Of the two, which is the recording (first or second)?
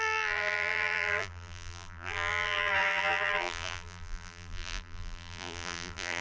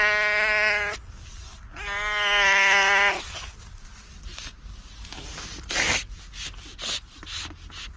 second